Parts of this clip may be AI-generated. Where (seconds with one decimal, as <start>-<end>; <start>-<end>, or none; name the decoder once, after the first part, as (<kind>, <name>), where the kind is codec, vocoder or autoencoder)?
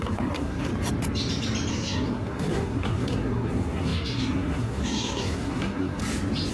0.0-0.7 (codec, SNAC); 1.7-6.0